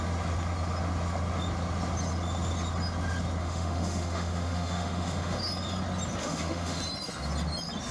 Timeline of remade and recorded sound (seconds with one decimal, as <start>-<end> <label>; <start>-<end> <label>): 0.0-3.4 recorded; 3.4-5.4 remade; 5.4-6.2 recorded; 6.2-6.8 remade; 6.8-7.9 recorded